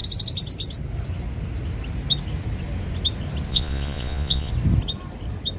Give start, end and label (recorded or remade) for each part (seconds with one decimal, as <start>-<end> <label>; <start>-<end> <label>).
0.0-3.5 recorded; 3.5-4.5 remade; 4.5-5.6 recorded